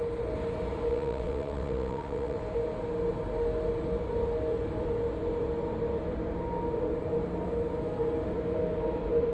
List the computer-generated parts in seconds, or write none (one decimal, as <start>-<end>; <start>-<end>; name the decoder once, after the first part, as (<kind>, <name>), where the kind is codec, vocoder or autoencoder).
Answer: 0.9-2.4 (vocoder, WaveNeXt)